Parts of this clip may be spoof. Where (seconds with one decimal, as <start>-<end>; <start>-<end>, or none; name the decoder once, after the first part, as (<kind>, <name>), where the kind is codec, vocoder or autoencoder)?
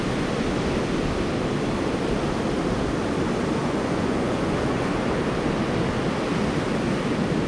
3.6-4.9 (vocoder, Vocos)